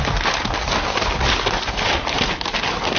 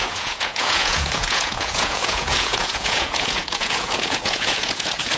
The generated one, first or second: second